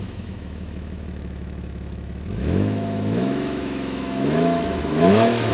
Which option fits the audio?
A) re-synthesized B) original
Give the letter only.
A